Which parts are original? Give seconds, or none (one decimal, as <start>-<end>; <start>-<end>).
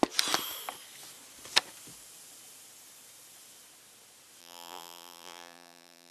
0.0-4.4